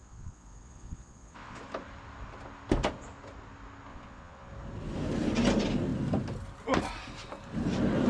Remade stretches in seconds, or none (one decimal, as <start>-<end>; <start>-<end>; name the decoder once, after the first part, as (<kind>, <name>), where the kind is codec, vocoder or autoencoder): 0.0-1.6 (vocoder, Vocos); 3.9-4.5